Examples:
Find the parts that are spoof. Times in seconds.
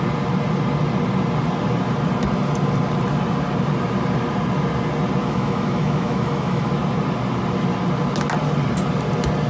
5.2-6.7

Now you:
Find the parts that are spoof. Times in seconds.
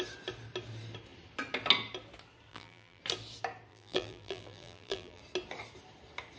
2.5-3.0; 3.7-5.2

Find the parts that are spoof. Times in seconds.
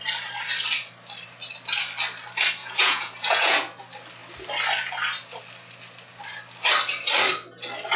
2.6-3.8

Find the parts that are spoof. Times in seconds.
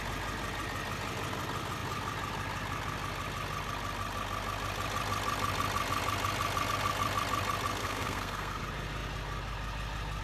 7.8-8.6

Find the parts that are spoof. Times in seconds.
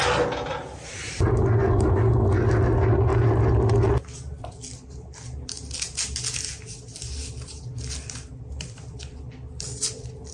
none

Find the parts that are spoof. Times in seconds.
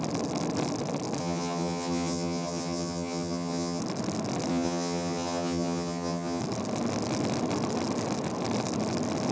1.2-3.8; 4.5-6.4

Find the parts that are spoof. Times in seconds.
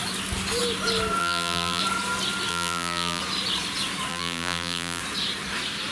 1.2-1.8; 2.5-3.2; 4.1-5.0